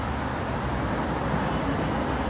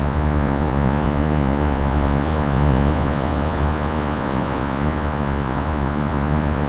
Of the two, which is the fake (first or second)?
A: second